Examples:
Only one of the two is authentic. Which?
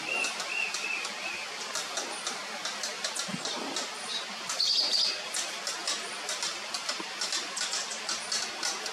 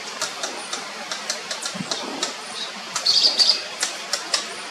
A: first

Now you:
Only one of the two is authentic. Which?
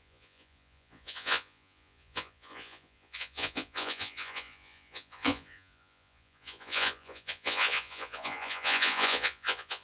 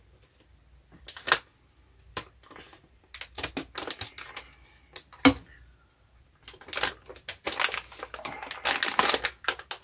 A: second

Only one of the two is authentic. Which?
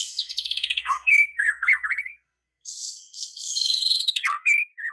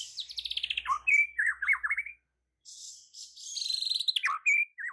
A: second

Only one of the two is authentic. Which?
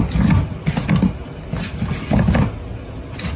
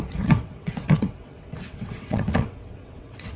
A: first